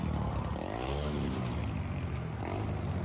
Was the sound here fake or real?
real